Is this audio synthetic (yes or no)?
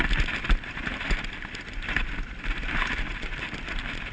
no